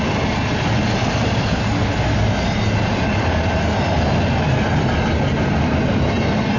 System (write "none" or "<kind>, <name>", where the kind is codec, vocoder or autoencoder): none